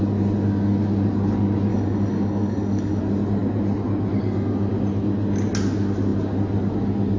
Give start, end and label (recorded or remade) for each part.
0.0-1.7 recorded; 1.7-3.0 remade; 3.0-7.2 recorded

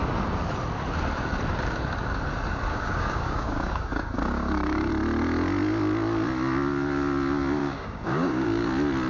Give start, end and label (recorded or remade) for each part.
0.0-2.7 recorded; 2.7-4.9 remade; 4.9-7.6 recorded; 7.6-8.7 remade; 8.7-9.1 recorded

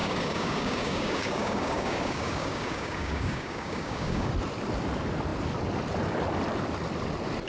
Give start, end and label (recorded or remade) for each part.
0.0-4.3 remade; 4.3-7.5 recorded